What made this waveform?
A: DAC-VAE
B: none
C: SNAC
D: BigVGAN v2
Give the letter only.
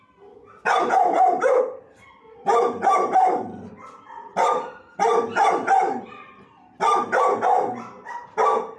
B